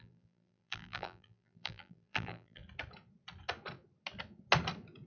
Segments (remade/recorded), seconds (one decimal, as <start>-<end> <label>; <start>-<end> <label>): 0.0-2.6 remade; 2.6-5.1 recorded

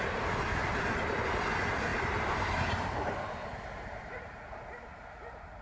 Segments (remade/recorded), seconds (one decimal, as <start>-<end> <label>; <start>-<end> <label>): 0.0-1.9 recorded; 1.9-4.4 remade; 4.4-5.6 recorded

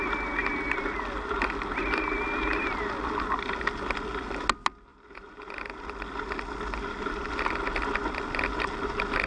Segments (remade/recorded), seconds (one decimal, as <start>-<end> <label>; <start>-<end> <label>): 0.0-4.9 recorded; 4.9-5.4 remade; 5.4-9.3 recorded

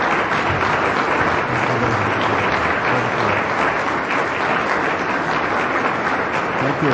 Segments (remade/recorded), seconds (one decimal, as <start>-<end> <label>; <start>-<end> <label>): 0.0-6.9 recorded

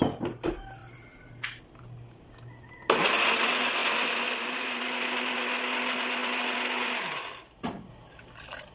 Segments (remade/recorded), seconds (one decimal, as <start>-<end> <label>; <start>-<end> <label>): 0.0-3.8 recorded; 3.8-5.3 remade; 5.3-8.7 recorded

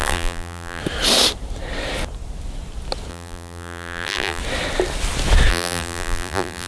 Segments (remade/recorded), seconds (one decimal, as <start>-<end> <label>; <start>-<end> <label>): 0.0-0.8 remade; 0.8-3.1 recorded; 3.1-4.4 remade; 4.4-5.5 recorded; 5.5-6.7 remade

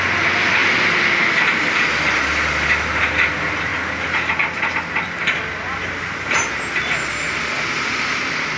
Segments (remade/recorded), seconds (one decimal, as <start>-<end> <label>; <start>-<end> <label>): 0.0-8.6 recorded

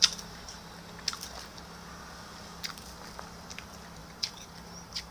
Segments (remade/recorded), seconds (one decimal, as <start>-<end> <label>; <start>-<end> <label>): 0.0-0.6 remade; 0.6-4.0 recorded; 4.0-5.1 remade